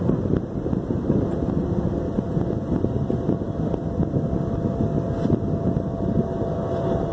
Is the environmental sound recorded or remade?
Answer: recorded